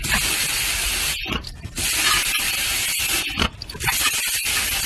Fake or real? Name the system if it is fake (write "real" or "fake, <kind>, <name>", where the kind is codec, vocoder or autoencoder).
real